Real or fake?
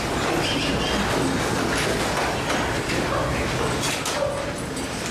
real